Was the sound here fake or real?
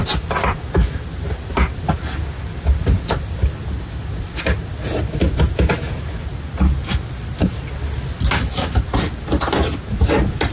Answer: real